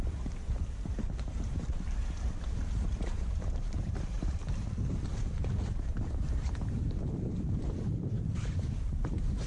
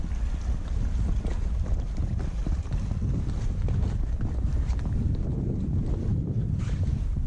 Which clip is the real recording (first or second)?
second